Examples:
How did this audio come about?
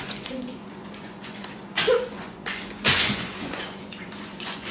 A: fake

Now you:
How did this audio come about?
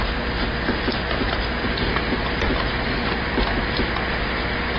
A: real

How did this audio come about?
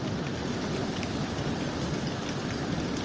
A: real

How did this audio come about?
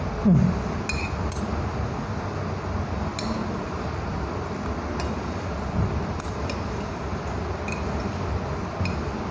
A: real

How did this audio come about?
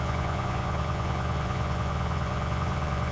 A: fake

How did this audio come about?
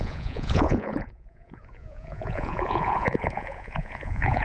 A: fake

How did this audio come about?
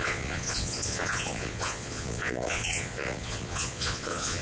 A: fake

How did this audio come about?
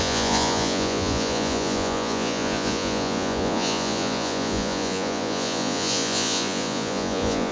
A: fake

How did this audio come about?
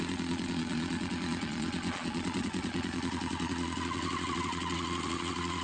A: fake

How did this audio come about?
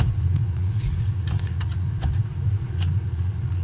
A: fake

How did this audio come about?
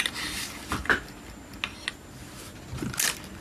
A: real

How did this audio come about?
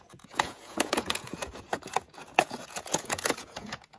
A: fake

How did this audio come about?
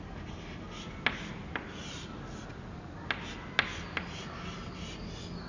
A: real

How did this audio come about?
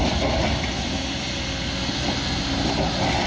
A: real